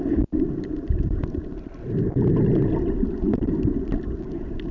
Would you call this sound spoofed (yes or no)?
no